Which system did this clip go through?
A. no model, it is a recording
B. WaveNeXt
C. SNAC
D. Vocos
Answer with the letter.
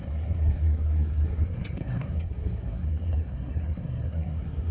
C